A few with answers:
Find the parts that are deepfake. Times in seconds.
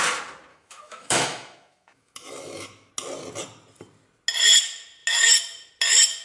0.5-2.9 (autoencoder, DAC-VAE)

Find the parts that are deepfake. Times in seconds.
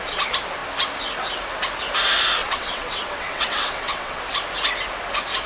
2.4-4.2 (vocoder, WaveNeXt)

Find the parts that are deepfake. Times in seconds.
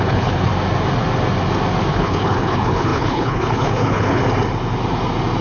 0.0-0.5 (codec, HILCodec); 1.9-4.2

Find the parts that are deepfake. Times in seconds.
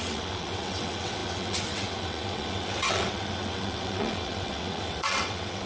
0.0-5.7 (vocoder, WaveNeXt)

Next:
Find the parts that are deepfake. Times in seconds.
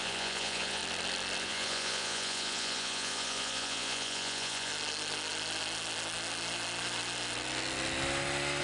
0.0-0.8 (vocoder, Vocos); 1.4-4.7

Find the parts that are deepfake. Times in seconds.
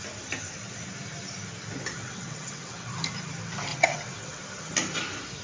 2.0-2.9 (vocoder, WaveNeXt); 3.7-4.4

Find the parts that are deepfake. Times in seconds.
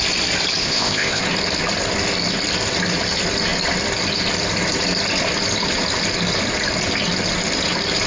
0.6-1.2 (codec, ZipCodec)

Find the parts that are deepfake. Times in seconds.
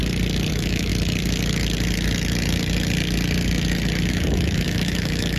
0.5-0.9 (autoencoder, DAC-VAE); 4.1-5.4